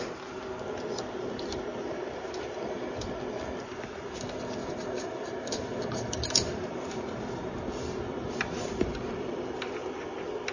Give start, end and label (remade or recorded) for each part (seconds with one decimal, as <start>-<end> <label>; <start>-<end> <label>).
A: 0.0-0.9 recorded; 0.9-2.3 remade; 2.3-4.6 recorded; 4.6-9.6 remade; 9.6-10.5 recorded